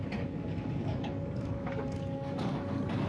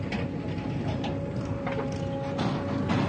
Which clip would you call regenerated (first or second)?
first